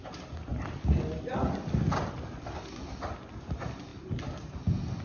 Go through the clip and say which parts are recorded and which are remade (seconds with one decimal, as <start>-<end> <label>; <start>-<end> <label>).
0.0-5.0 recorded